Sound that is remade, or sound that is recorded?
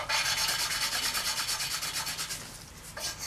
recorded